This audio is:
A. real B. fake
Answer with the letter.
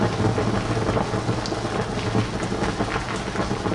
A